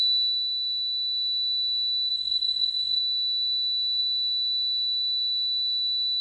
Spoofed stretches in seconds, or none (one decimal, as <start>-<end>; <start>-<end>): 2.1-3.0